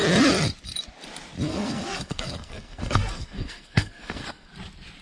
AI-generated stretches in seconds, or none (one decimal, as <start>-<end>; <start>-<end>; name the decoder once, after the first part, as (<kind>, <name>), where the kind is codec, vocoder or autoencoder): 1.5-4.5 (codec, SNAC)